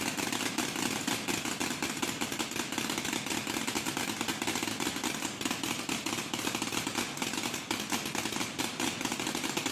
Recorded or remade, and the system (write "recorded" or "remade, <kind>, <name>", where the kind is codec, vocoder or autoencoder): recorded